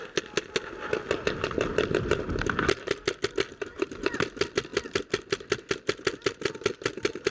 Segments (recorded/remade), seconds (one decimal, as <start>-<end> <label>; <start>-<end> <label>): 0.0-3.5 recorded; 3.5-4.1 remade; 4.1-7.3 recorded